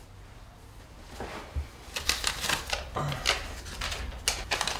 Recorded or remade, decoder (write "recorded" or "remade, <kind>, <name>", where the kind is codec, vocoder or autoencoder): recorded